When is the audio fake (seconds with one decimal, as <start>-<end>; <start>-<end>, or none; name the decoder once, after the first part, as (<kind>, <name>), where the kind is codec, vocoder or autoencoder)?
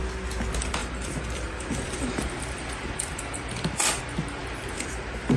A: 0.8-4.0 (vocoder, BigVGAN v2); 4.4-5.4